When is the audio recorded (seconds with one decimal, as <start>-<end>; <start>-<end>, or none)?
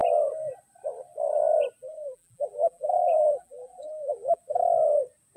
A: 0.0-1.8; 4.4-5.4